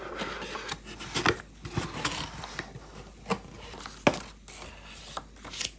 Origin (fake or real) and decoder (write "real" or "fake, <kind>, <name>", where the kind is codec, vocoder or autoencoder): real